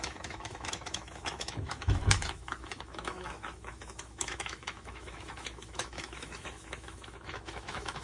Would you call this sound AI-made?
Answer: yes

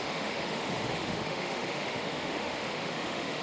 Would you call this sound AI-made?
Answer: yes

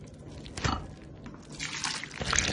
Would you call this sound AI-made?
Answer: no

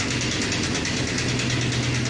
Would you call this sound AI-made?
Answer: no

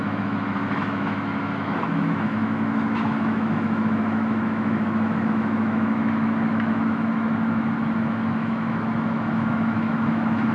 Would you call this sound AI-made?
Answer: yes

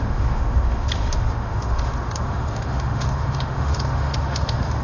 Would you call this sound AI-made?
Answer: yes